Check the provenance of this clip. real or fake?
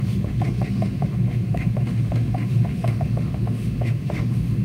fake